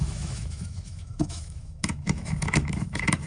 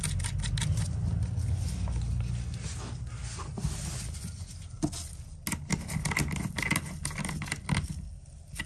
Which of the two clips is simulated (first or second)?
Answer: first